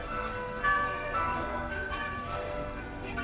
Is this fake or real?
fake